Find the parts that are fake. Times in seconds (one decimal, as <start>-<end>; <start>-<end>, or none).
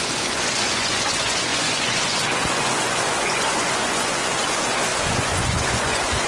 0.0-6.3